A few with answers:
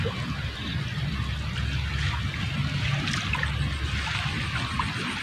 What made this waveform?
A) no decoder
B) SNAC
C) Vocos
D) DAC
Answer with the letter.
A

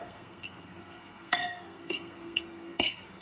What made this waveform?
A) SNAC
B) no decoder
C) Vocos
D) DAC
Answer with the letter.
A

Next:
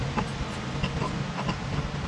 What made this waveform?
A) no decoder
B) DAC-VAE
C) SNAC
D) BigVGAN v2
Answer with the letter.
A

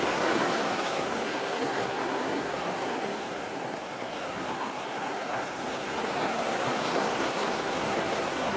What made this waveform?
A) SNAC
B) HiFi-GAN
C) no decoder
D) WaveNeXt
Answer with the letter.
A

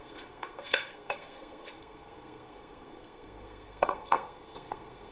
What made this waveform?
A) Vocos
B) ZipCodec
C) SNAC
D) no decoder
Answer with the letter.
C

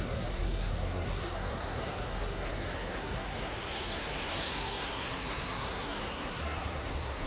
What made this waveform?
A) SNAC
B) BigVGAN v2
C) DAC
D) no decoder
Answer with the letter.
A